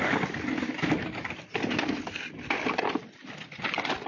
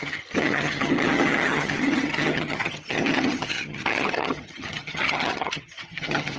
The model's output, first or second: second